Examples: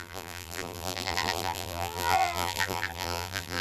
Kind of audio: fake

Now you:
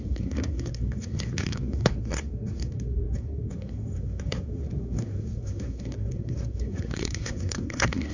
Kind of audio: fake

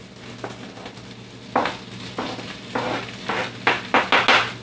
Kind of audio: real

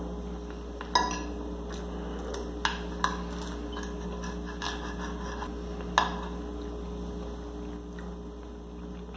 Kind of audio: real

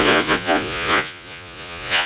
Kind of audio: fake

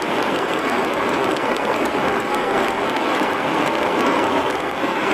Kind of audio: fake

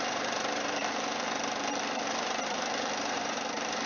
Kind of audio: fake